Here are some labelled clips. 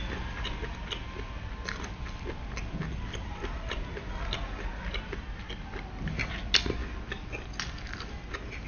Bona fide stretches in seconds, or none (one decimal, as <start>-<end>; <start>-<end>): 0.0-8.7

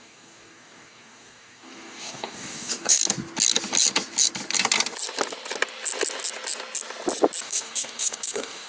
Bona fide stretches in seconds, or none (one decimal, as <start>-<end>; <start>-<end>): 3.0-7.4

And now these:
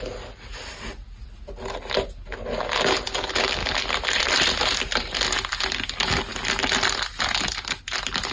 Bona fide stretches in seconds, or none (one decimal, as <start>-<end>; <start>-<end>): 0.0-8.3

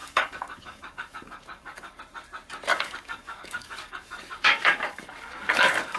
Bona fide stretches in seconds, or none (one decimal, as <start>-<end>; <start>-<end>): 2.0-2.7

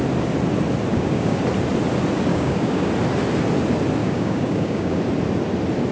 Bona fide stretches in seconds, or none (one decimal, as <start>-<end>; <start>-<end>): 0.0-0.9; 1.4-2.3; 2.9-4.0; 5.0-5.9

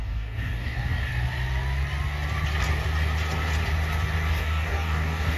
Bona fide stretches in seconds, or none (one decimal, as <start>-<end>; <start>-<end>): 1.1-4.3

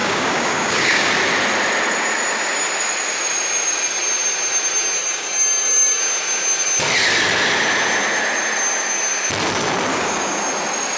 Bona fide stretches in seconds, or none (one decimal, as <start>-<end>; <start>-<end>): 1.1-5.0; 6.0-9.9; 10.4-11.0

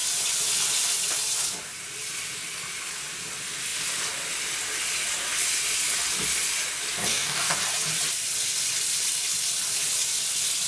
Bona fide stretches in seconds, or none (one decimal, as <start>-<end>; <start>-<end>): 0.0-7.0; 7.6-10.7